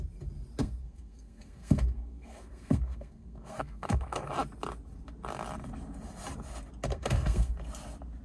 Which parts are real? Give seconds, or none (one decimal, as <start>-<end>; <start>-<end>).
0.0-0.6; 4.3-6.9; 7.5-8.2